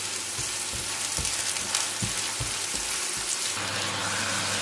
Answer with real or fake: real